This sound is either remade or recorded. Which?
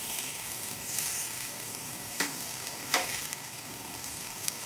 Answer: remade